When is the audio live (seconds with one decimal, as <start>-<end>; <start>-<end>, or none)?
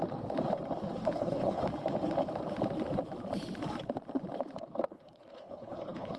0.0-1.0; 1.6-4.9